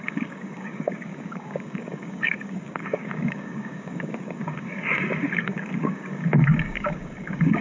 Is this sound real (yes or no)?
no